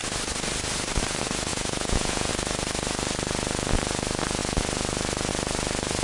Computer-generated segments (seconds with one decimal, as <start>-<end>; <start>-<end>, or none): 1.5-2.3